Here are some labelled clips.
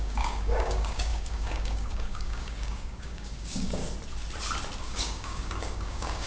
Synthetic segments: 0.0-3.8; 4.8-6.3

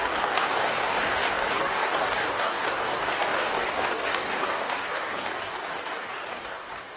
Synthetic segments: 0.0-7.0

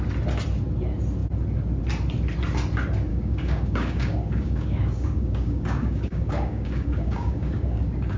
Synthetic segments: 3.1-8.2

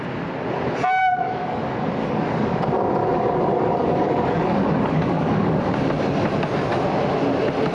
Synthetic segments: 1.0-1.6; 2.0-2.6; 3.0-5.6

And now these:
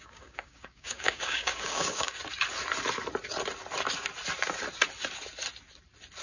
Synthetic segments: 0.0-2.2